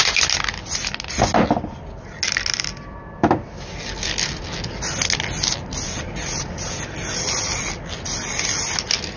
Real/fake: real